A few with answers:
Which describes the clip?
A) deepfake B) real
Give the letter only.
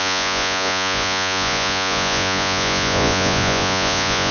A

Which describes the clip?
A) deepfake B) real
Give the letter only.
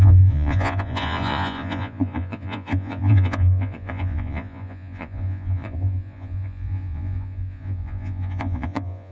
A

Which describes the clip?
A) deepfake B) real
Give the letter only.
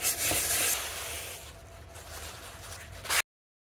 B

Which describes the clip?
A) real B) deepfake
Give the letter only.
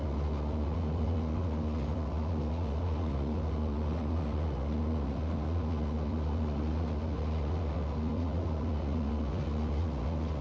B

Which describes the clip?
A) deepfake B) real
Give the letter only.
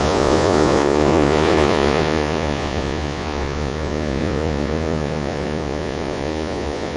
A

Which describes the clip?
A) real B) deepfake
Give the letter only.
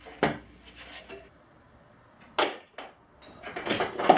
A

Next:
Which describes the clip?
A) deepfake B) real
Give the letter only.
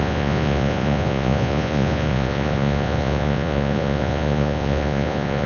A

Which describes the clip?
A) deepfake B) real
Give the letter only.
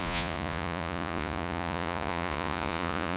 A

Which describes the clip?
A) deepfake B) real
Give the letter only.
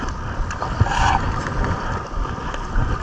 B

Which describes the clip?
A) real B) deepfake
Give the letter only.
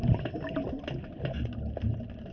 A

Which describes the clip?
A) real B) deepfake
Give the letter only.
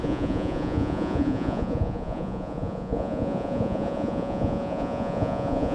B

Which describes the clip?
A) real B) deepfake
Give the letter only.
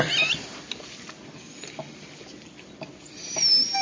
A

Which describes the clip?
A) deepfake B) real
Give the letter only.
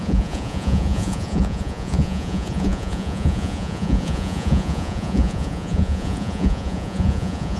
A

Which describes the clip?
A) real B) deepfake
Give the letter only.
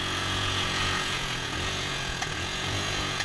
B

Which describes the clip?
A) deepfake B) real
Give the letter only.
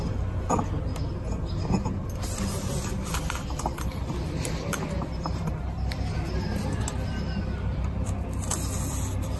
B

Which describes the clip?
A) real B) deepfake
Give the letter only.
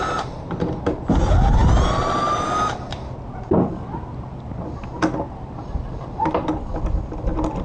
A